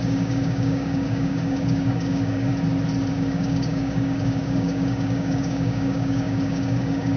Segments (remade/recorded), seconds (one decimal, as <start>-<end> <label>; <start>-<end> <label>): 0.0-2.5 remade; 2.5-3.1 recorded; 3.1-7.2 remade